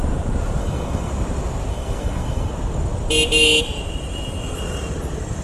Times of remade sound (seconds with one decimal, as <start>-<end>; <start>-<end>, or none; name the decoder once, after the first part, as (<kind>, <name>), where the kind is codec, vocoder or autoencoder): 0.6-1.1 (codec, SNAC); 1.7-2.5